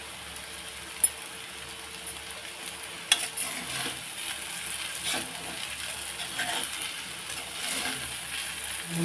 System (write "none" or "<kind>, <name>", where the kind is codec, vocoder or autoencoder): none